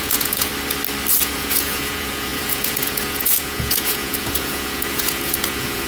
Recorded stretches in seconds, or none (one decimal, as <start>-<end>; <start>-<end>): 0.5-1.2